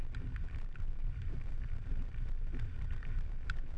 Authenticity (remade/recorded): remade